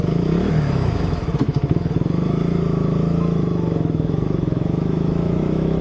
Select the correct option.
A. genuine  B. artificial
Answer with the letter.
B